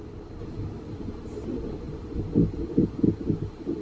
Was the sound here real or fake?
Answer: real